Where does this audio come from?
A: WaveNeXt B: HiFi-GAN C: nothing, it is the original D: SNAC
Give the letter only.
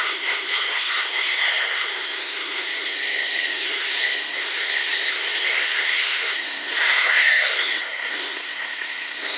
D